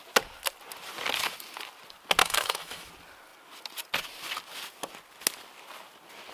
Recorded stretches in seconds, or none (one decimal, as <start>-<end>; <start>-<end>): 0.0-2.2; 2.9-6.3